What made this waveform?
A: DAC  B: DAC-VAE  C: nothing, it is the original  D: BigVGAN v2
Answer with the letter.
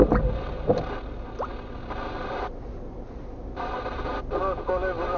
C